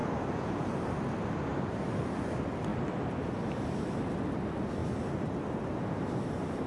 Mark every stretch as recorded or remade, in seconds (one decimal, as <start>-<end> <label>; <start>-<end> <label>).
0.0-6.7 recorded